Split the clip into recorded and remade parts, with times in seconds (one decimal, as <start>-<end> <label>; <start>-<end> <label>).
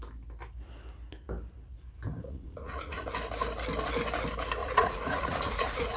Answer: 0.0-2.1 recorded; 2.1-3.1 remade; 3.1-4.6 recorded; 4.6-6.0 remade